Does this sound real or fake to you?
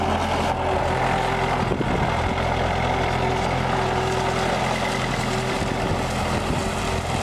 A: real